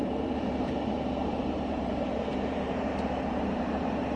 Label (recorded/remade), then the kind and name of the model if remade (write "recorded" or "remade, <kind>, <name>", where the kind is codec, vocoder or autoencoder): remade, vocoder, BigVGAN v2